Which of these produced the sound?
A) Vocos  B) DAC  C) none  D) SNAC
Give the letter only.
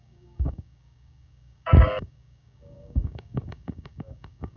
B